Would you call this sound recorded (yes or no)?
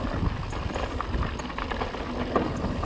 yes